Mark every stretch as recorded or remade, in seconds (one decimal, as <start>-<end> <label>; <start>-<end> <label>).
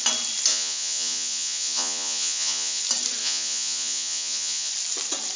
0.0-0.5 recorded; 0.5-2.8 remade; 2.8-3.2 recorded; 3.2-4.7 remade; 4.7-5.4 recorded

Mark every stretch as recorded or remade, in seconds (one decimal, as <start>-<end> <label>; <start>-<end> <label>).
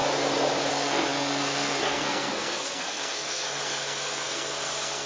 0.0-0.7 recorded; 0.7-5.1 remade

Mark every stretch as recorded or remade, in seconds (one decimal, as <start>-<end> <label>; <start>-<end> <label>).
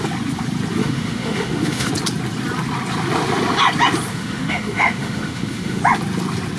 0.0-0.8 recorded; 0.8-1.9 remade; 1.9-4.1 recorded; 4.1-5.8 remade; 5.8-6.6 recorded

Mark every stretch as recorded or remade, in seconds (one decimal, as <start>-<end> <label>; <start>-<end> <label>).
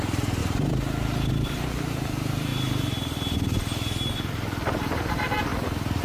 0.0-2.5 remade; 2.5-5.1 recorded; 5.1-5.5 remade; 5.5-6.0 recorded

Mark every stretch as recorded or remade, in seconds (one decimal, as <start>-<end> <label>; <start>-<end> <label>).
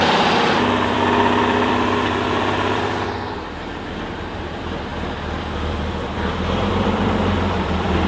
0.0-4.9 remade; 4.9-5.4 recorded; 5.4-8.1 remade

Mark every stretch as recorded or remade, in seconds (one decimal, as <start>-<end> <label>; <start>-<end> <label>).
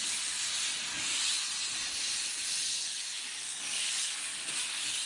0.0-0.9 recorded; 0.9-1.5 remade; 1.5-2.7 recorded; 2.7-5.1 remade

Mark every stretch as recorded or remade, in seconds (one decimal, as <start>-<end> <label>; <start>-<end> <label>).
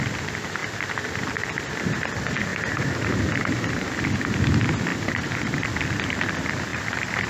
0.0-2.5 recorded; 2.5-3.9 remade; 3.9-4.9 recorded; 4.9-5.7 remade; 5.7-6.7 recorded; 6.7-7.3 remade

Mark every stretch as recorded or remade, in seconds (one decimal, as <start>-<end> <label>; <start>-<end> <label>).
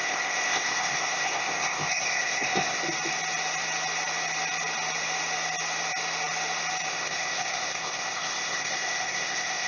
0.0-2.8 remade; 2.8-6.9 recorded; 6.9-9.7 remade